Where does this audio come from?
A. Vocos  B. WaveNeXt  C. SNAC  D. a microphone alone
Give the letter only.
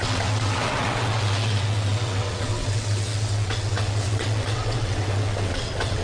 B